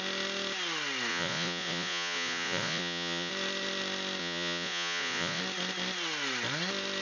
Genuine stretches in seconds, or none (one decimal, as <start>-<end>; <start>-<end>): 0.0-1.1; 3.3-4.2; 5.4-7.0